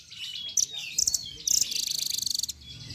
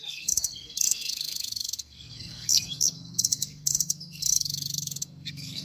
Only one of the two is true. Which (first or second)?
first